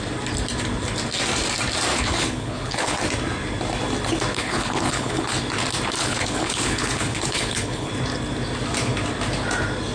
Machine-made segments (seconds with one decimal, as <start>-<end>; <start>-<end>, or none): 1.9-3.0; 4.3-5.4; 6.0-7.9

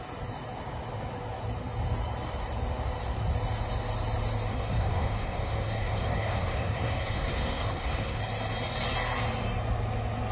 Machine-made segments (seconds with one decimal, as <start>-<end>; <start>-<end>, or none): 4.5-8.2